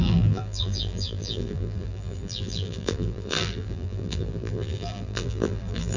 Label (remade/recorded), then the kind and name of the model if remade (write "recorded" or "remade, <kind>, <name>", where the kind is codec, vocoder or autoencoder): remade, vocoder, BigVGAN v2